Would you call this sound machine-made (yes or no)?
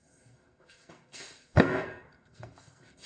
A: yes